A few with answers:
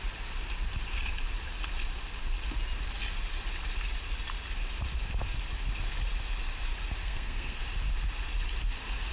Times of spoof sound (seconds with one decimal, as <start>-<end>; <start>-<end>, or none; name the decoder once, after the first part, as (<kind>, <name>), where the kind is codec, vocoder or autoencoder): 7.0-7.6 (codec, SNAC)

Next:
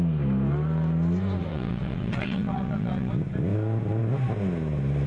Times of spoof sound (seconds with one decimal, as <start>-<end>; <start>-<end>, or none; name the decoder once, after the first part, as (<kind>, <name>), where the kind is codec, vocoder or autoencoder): 1.5-3.1 (vocoder, WaveNeXt)

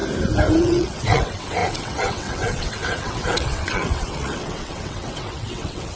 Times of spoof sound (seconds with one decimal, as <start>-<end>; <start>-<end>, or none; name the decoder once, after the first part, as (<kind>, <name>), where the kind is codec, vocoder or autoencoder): 0.6-6.0 (vocoder, WaveNeXt)

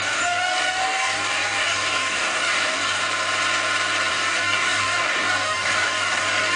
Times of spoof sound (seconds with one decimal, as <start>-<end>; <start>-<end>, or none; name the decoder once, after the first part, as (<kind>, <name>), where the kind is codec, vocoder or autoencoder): 0.0-3.0 (codec, DAC); 4.1-6.6

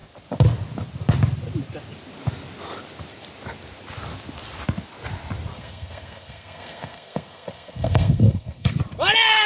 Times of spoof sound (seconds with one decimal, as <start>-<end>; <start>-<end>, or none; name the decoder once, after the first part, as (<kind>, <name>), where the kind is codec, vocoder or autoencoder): 5.5-8.7 (codec, SNAC)

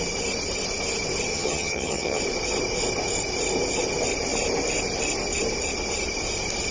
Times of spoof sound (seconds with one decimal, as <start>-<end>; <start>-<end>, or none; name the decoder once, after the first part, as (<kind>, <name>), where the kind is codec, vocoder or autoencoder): 1.3-2.2 (vocoder, HiFi-GAN)